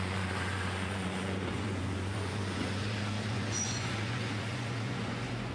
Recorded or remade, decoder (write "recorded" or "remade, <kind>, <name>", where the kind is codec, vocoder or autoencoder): remade, vocoder, Vocos